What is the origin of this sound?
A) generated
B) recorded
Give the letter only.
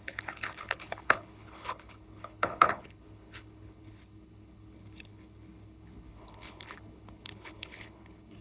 A